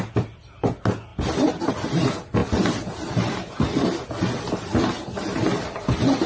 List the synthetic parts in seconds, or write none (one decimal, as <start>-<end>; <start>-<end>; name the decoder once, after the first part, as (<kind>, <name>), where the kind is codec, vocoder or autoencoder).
none